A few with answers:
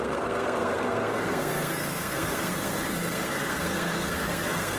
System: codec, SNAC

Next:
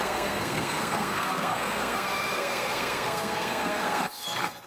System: codec, SNAC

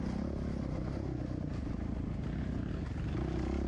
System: none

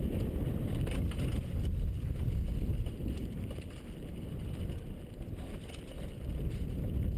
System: none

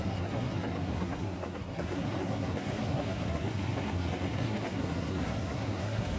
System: codec, SNAC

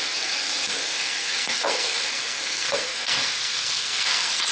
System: codec, SNAC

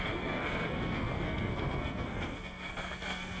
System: codec, SNAC